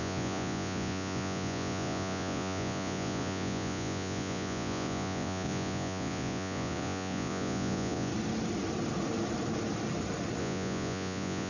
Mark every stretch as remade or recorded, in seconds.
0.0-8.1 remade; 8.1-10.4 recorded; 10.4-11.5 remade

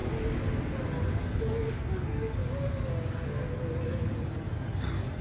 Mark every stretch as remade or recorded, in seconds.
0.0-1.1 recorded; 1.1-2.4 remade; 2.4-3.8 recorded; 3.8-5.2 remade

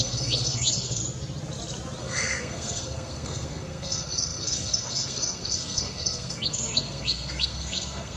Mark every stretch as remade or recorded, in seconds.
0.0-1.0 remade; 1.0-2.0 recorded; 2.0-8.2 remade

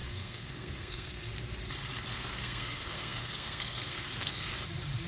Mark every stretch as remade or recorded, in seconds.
0.0-1.3 remade; 1.3-2.1 recorded; 2.1-4.5 remade; 4.5-5.1 recorded

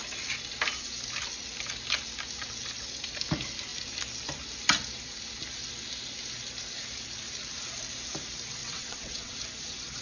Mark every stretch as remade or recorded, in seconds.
0.0-8.6 recorded; 8.6-9.4 remade; 9.4-10.0 recorded

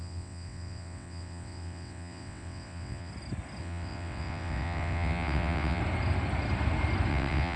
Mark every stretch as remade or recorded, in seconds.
0.0-3.1 remade; 3.1-3.6 recorded; 3.6-5.8 remade; 5.8-7.1 recorded; 7.1-7.6 remade

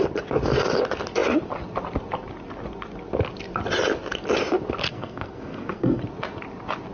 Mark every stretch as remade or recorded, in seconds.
0.0-4.9 recorded; 4.9-6.0 remade; 6.0-6.9 recorded